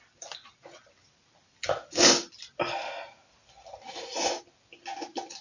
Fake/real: real